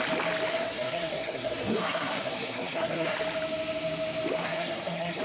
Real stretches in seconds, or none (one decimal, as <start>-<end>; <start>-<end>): 0.0-0.5; 3.2-4.4